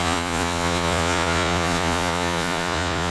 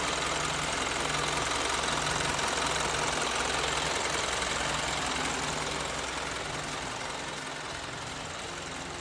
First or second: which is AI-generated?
first